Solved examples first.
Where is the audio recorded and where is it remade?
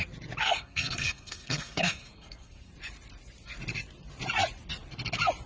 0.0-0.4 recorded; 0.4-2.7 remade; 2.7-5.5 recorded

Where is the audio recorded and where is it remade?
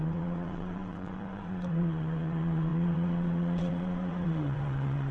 0.0-5.1 remade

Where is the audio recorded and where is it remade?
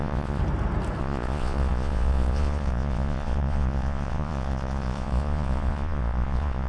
0.0-0.4 remade; 0.4-1.0 recorded; 1.0-6.7 remade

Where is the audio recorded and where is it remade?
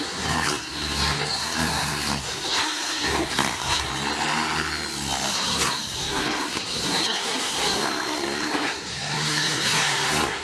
0.0-3.9 remade; 3.9-5.3 recorded; 5.3-10.4 remade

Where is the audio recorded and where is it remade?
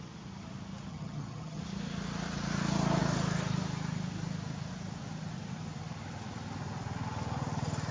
0.0-0.9 recorded; 0.9-1.6 remade; 1.6-7.9 recorded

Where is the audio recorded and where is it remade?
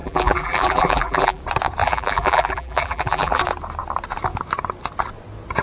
0.0-1.4 remade; 1.4-1.8 recorded; 1.8-3.4 remade; 3.4-5.6 recorded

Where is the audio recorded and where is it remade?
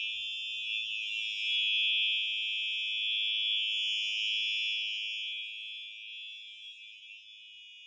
0.0-7.9 recorded